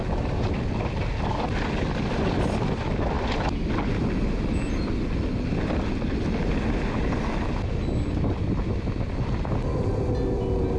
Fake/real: real